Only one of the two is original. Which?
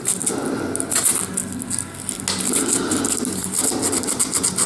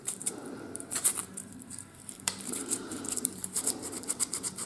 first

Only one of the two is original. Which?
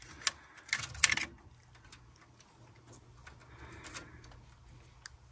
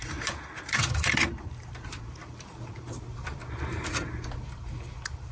first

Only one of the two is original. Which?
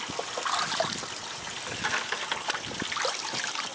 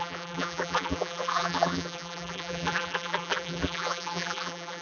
first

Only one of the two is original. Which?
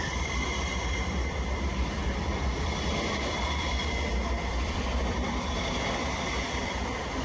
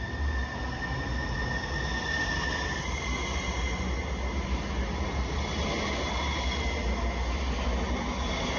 second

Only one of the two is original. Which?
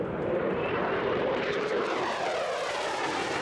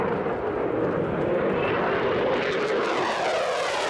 second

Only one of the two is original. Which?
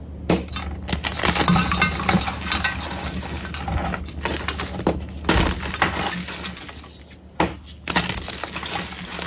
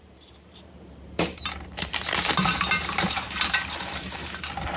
first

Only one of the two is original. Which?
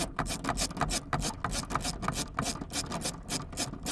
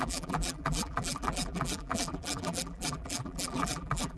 first